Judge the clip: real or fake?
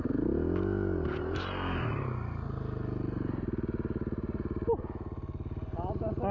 real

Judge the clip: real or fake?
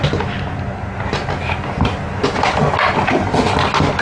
real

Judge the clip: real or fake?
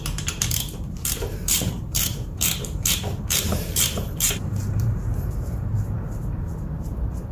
fake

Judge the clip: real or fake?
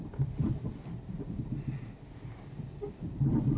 fake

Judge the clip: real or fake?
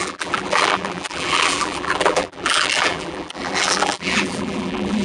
fake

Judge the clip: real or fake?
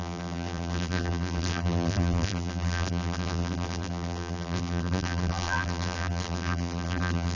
fake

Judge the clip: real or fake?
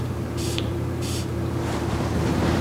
fake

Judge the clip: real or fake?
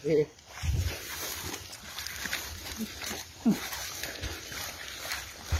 fake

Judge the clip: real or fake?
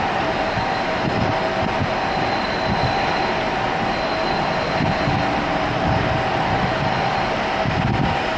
fake